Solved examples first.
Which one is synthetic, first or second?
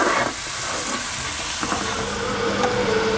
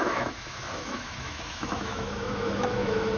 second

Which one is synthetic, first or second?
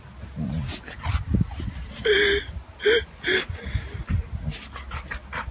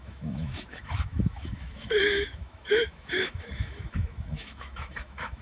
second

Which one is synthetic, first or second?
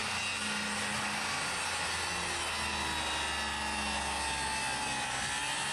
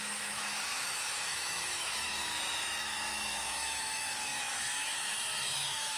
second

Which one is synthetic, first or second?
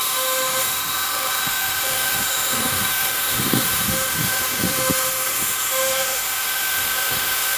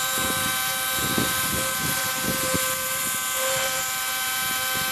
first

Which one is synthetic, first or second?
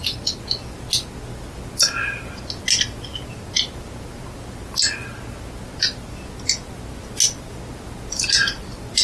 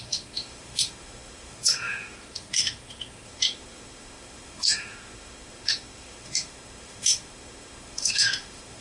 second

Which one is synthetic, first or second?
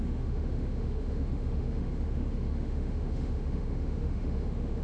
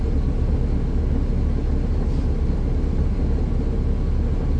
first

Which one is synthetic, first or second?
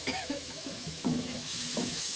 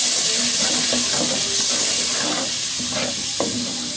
first